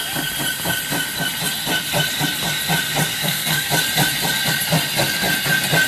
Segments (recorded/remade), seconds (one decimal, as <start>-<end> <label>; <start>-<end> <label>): 0.0-3.1 recorded; 3.1-3.7 remade; 3.7-5.9 recorded